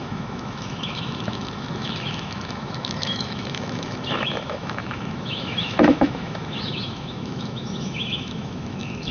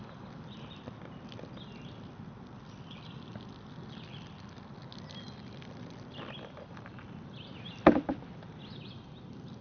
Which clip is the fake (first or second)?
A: first